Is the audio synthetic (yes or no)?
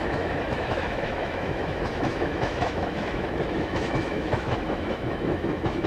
yes